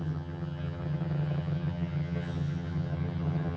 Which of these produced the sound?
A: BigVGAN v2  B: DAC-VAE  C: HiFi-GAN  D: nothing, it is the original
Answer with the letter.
C